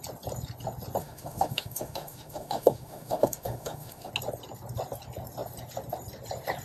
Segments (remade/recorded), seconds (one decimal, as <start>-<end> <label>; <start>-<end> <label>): 0.0-1.0 recorded; 1.0-4.1 remade; 4.1-6.6 recorded